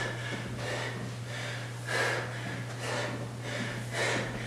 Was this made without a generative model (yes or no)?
yes